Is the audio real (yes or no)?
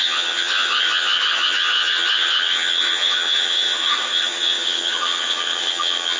no